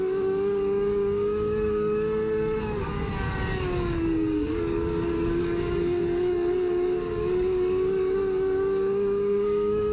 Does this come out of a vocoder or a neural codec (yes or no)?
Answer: yes